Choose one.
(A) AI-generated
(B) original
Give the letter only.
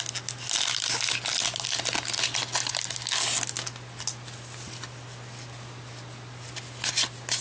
B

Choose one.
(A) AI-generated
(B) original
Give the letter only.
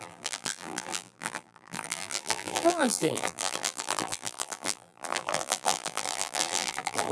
A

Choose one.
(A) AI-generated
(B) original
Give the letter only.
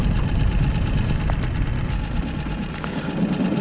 B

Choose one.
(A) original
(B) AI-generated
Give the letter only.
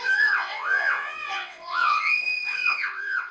B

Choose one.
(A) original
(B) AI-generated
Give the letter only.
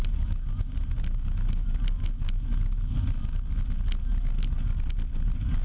A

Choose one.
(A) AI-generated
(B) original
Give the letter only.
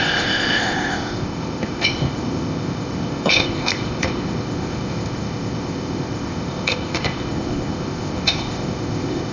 A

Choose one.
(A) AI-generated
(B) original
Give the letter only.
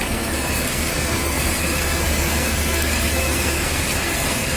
A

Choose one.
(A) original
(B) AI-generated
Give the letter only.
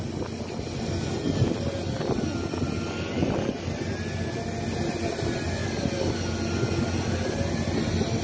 A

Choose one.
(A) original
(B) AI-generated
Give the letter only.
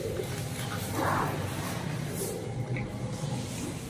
B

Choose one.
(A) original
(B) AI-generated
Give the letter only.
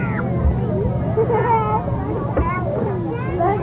A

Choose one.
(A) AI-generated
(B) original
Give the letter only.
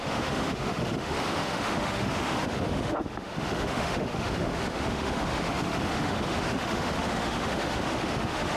A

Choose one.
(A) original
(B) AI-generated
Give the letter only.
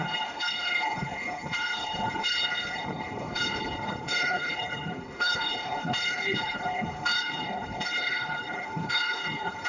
B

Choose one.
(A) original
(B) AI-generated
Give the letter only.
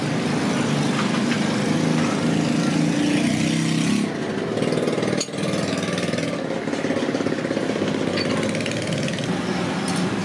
A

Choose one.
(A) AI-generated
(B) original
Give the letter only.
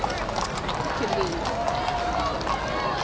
B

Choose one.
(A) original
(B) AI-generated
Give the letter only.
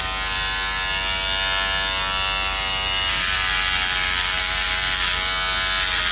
A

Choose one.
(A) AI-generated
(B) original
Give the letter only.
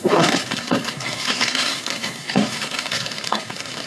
A